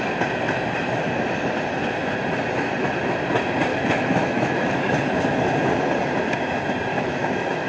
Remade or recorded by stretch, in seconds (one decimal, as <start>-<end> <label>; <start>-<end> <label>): 0.0-3.7 recorded; 3.7-4.9 remade; 4.9-6.9 recorded; 6.9-7.7 remade